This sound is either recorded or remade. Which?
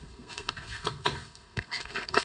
remade